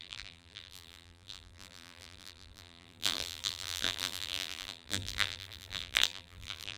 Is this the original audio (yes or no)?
no